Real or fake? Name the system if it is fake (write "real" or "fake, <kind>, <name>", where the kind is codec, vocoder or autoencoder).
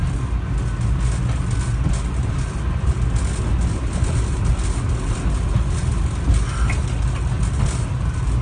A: real